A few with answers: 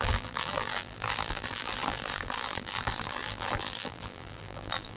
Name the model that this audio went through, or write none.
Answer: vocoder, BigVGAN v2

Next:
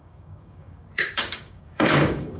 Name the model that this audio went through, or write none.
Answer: codec, DAC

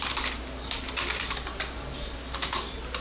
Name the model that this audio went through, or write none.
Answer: none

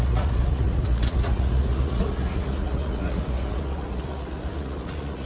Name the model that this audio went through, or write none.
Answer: vocoder, Vocos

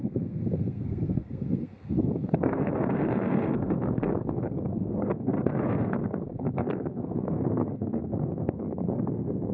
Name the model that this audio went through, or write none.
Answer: codec, SNAC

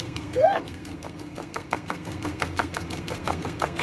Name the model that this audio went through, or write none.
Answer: codec, SNAC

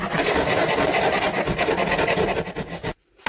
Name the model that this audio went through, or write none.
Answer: none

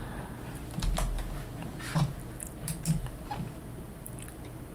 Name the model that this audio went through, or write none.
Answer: vocoder, BigVGAN v2